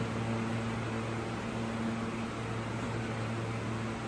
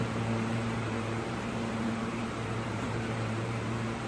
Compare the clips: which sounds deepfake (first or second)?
second